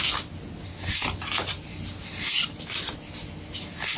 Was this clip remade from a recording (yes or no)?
no